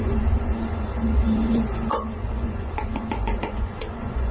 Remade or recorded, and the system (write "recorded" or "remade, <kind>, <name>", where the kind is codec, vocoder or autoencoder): remade, vocoder, Vocos